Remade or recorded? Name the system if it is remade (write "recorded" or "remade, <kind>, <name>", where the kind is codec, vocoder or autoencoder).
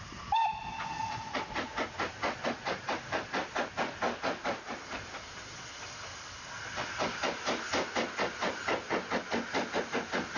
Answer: recorded